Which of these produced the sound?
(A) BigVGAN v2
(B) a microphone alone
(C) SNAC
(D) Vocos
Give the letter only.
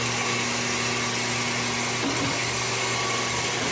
B